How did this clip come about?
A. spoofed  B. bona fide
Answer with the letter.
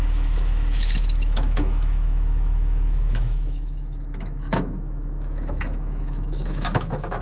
A